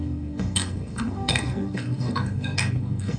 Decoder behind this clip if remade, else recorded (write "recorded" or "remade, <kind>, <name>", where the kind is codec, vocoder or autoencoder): remade, codec, SNAC